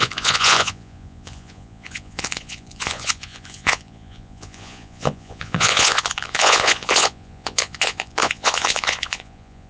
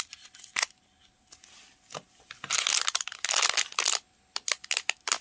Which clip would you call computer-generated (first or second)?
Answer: first